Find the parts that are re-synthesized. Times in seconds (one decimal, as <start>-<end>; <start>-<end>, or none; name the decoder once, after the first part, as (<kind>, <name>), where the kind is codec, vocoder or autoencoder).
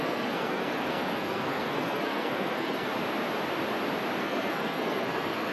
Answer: 0.0-2.9 (codec, SNAC); 4.2-5.5